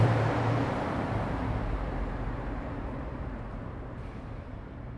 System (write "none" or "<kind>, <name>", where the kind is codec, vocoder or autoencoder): vocoder, BigVGAN v2